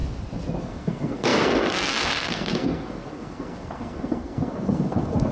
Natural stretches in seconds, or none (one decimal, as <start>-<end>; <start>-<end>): 0.0-0.6